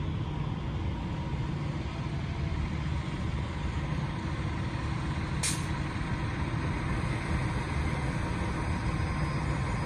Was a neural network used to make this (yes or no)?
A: no